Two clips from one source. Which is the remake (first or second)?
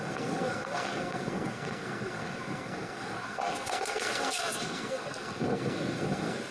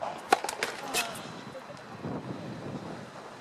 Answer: first